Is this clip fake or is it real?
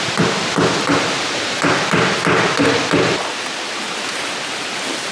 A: real